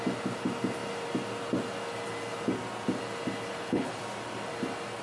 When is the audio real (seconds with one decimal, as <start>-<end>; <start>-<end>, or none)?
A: 0.0-3.5; 4.0-5.0